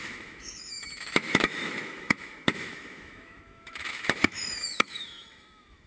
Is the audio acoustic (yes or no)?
no